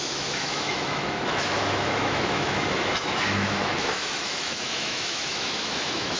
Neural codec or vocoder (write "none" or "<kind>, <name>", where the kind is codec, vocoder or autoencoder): autoencoder, DAC-VAE